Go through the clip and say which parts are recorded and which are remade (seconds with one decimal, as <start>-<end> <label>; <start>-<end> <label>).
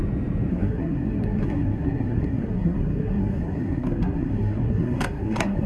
0.0-0.5 recorded; 0.5-5.7 remade